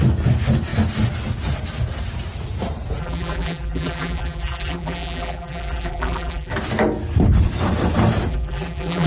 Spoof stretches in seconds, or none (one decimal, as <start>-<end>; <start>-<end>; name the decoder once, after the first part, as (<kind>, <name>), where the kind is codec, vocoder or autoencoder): 3.0-6.5 (vocoder, BigVGAN v2); 8.3-9.1